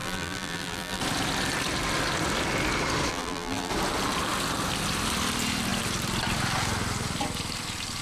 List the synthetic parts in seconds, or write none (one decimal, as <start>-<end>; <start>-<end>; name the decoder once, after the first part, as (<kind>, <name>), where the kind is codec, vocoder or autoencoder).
0.0-1.0 (vocoder, BigVGAN v2); 3.1-3.7

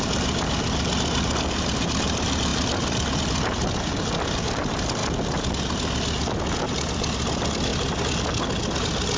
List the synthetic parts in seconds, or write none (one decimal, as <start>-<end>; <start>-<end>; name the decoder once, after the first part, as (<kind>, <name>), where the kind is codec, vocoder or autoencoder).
0.0-5.0 (vocoder, BigVGAN v2); 6.7-7.7

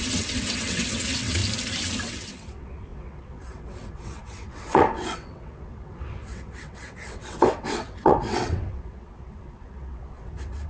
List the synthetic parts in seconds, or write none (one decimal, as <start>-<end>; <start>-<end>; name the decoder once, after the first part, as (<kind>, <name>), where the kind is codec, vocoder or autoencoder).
0.0-1.4 (vocoder, WaveNeXt); 2.1-10.7